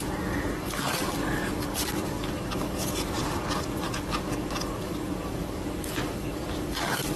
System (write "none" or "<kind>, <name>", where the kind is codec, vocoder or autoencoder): codec, DAC